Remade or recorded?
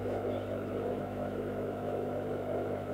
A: remade